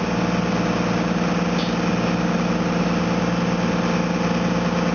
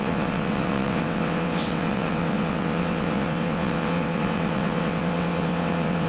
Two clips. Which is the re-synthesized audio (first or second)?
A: second